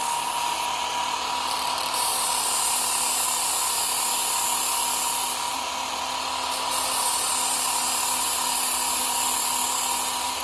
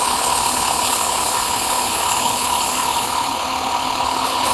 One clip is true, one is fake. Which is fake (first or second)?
second